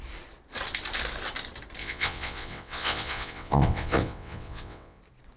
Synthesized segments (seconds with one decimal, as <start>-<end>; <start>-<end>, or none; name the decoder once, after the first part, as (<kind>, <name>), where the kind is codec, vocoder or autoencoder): 1.8-5.0 (vocoder, WaveNeXt)